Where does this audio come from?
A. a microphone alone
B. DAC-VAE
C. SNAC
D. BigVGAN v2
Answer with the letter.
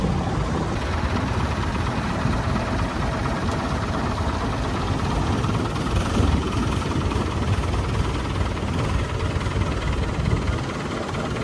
D